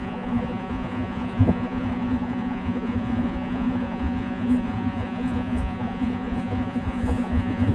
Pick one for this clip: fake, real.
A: fake